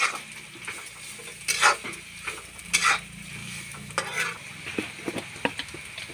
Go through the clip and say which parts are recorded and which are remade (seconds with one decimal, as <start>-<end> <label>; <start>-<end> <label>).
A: 0.0-3.4 recorded; 3.4-3.9 remade; 3.9-6.1 recorded